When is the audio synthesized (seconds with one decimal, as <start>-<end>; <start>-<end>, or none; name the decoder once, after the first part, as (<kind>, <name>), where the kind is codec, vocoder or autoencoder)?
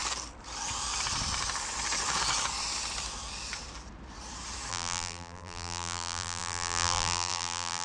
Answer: 4.7-7.8 (vocoder, BigVGAN v2)